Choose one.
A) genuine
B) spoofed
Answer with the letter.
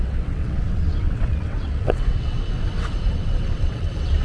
B